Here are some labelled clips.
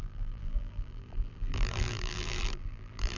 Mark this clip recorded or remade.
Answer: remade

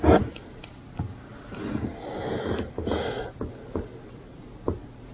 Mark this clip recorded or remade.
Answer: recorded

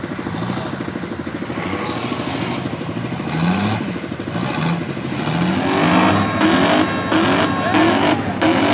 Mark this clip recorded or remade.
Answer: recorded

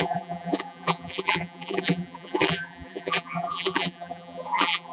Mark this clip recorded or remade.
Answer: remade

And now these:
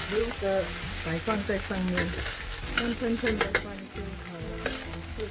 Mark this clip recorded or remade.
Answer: recorded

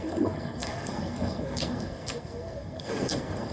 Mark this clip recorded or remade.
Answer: remade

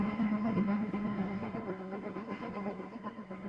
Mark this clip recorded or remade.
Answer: remade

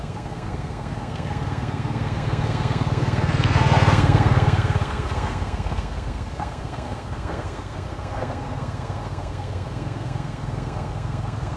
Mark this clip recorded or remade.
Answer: remade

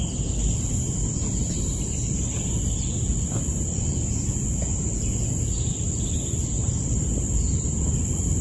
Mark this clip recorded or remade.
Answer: recorded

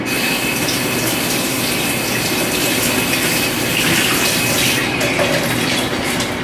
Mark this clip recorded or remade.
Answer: recorded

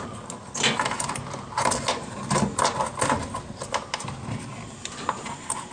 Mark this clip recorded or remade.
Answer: recorded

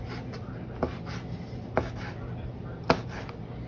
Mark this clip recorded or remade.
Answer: recorded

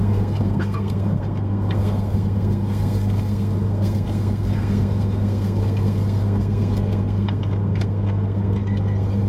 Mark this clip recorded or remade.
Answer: remade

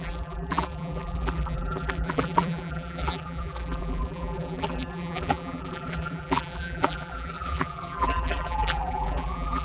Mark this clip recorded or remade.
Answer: remade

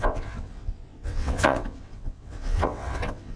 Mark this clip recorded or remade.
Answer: remade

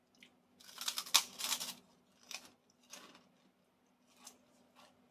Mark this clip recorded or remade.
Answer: recorded